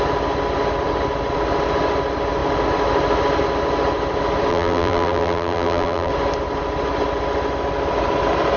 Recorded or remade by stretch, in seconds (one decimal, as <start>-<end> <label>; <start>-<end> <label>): 0.0-4.5 recorded; 4.5-6.1 remade; 6.1-8.6 recorded